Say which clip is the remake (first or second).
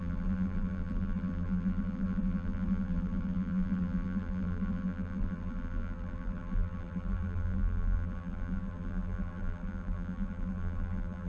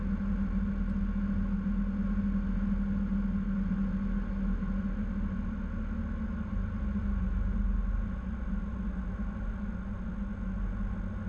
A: first